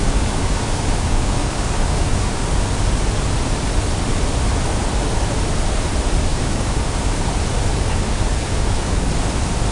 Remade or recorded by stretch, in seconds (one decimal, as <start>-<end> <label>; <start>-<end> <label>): 0.0-2.3 remade; 2.3-6.3 recorded; 6.3-7.1 remade; 7.1-7.7 recorded; 7.7-9.1 remade; 9.1-9.7 recorded